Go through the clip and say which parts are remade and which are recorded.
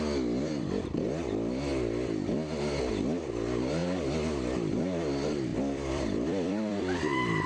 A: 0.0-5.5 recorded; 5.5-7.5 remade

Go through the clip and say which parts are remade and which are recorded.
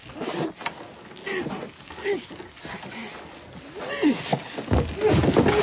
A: 0.0-5.6 recorded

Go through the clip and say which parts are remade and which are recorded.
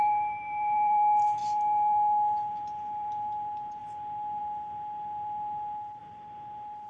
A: 0.0-3.8 remade; 3.8-4.4 recorded; 4.4-6.9 remade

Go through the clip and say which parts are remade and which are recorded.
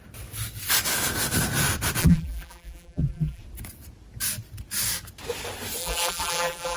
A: 0.0-2.0 recorded; 2.0-3.4 remade; 3.4-5.8 recorded; 5.8-6.8 remade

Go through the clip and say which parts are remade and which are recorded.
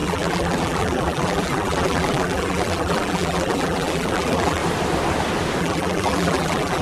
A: 0.0-4.6 remade; 4.6-5.6 recorded; 5.6-6.8 remade